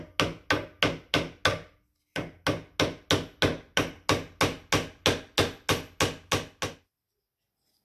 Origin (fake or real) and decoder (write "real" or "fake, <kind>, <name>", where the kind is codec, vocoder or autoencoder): real